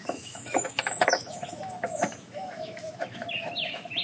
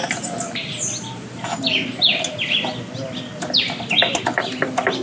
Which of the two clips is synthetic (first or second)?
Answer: first